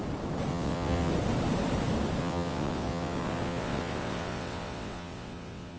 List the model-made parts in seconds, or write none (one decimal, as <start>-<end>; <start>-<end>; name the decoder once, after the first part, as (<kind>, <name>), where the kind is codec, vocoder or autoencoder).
0.5-1.1 (vocoder, WaveNeXt); 2.2-5.8